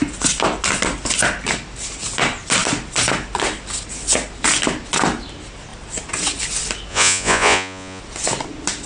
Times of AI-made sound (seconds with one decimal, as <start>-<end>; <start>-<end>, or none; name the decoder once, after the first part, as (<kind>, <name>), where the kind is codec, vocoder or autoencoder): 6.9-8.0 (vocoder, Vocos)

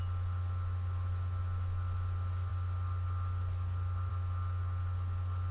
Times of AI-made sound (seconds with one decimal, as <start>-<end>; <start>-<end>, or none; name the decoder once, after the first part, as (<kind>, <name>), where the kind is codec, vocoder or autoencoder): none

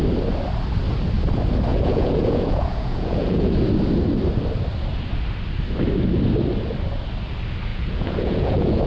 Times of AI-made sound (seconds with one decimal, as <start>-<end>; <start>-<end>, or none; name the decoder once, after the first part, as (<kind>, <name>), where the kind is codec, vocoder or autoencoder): 1.7-3.5 (vocoder, Vocos); 7.7-8.9

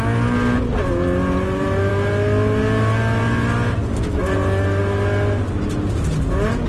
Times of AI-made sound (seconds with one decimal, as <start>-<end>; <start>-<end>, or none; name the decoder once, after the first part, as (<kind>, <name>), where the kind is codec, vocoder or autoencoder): none